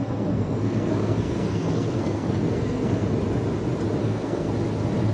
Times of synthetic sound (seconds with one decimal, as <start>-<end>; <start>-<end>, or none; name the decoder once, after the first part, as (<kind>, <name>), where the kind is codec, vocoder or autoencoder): 0.0-3.1 (codec, SNAC); 4.0-4.5